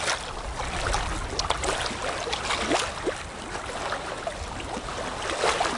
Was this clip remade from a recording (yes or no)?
no